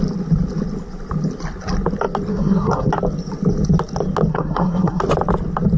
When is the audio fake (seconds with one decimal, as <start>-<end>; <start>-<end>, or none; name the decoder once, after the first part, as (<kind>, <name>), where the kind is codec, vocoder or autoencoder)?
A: 2.3-2.9 (codec, SNAC); 4.3-5.0